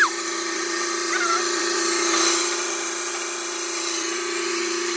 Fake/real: fake